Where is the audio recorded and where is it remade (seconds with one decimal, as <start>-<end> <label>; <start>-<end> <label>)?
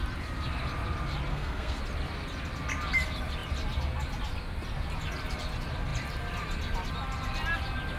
0.0-1.3 recorded; 1.3-1.8 remade; 1.8-8.0 recorded